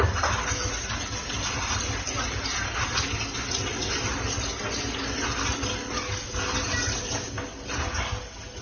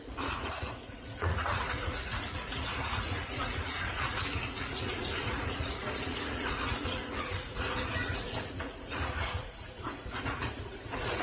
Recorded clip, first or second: first